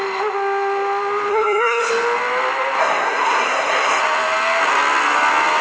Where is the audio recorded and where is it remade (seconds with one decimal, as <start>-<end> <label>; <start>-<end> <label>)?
0.0-1.3 recorded; 1.3-1.9 remade; 1.9-2.8 recorded; 2.8-4.0 remade; 4.0-5.6 recorded